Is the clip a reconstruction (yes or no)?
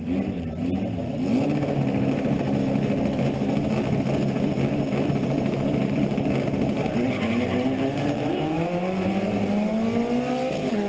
no